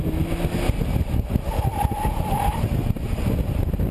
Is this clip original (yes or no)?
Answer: yes